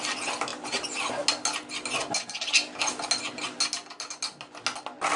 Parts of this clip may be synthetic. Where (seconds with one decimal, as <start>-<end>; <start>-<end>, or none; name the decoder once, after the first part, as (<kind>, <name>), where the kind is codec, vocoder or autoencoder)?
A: none